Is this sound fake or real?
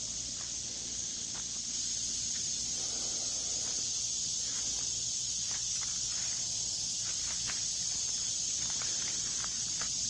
fake